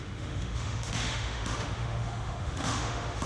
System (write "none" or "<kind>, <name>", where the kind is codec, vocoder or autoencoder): autoencoder, DAC-VAE